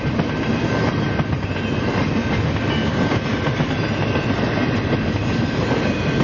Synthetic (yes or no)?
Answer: no